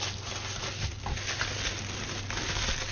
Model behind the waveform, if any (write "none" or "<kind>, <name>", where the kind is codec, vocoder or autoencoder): none